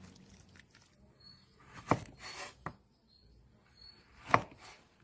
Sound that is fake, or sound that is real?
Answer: real